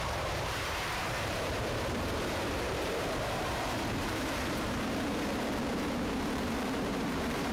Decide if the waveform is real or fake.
fake